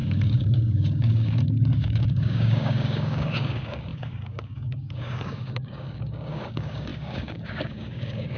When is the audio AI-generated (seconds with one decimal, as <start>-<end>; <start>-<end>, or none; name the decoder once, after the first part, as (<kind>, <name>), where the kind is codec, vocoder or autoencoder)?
0.0-8.4 (codec, DAC)